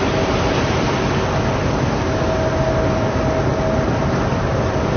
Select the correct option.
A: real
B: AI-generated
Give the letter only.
A